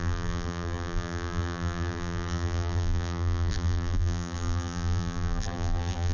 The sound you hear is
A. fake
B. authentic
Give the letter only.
A